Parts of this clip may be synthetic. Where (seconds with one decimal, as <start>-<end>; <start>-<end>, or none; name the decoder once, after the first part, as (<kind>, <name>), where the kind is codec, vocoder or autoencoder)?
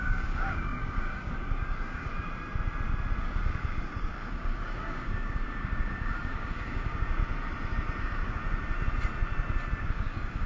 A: 0.0-2.1 (codec, DAC); 3.2-7.2; 8.0-8.4; 9.8-10.5